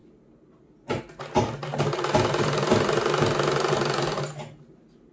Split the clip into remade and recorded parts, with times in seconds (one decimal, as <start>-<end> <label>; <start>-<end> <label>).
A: 0.0-5.1 recorded